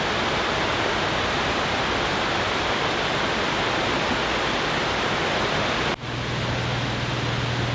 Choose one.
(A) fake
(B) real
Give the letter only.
B